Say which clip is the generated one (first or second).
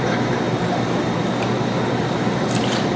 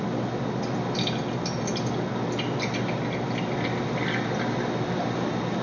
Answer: first